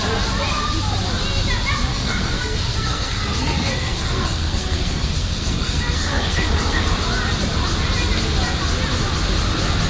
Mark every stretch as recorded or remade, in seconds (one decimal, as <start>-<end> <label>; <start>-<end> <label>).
0.0-1.9 recorded; 1.9-6.9 remade; 6.9-9.9 recorded